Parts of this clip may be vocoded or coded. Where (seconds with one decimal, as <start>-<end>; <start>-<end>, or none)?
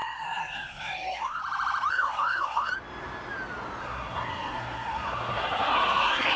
0.0-1.4; 1.9-2.7; 3.8-6.4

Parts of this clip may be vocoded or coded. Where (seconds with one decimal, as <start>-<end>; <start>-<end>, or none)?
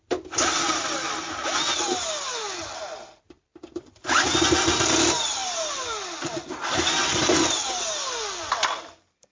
0.0-9.3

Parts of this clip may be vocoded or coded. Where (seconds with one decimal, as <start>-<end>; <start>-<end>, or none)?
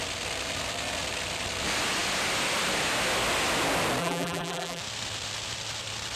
4.0-4.8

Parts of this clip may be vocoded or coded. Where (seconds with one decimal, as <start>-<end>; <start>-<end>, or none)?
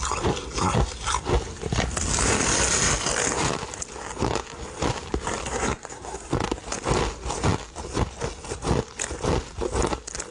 5.4-6.3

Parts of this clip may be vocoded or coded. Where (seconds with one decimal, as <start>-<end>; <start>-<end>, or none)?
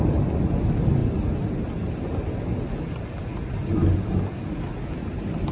none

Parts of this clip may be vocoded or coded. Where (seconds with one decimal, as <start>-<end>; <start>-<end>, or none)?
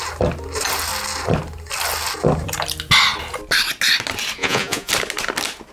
4.4-4.9